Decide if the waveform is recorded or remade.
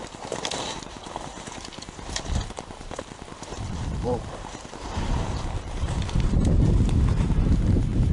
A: remade